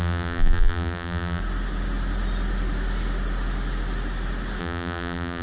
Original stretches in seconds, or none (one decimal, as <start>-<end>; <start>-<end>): 1.4-4.6